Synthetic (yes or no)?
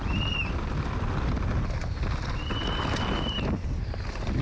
no